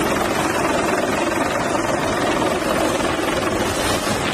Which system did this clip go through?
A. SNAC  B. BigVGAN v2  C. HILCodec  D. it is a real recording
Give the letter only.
D